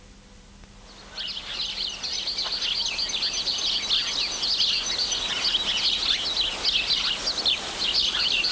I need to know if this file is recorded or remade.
recorded